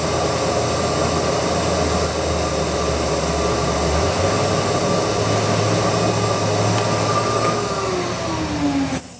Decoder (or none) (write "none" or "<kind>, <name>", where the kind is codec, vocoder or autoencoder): none